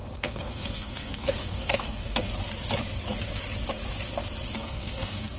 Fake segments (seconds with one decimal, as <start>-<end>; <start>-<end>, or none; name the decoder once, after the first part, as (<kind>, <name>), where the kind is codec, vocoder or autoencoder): 0.0-2.3 (codec, SNAC); 4.5-5.4